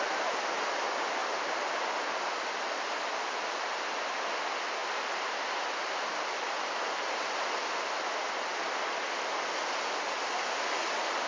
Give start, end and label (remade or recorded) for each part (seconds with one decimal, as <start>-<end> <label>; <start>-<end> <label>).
0.0-1.2 recorded; 1.2-1.8 remade; 1.8-4.8 recorded; 4.8-7.9 remade; 7.9-11.3 recorded